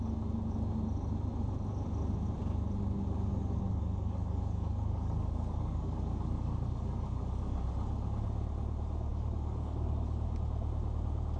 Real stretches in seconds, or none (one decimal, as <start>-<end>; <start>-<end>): 0.0-3.3; 7.7-9.1; 10.3-11.4